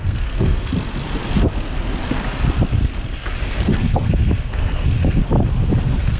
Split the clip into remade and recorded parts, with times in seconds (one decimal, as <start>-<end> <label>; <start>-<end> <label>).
0.0-0.7 remade; 0.7-3.4 recorded; 3.4-5.2 remade; 5.2-5.8 recorded; 5.8-6.2 remade